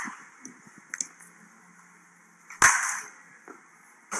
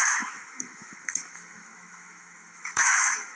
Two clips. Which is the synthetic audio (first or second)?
second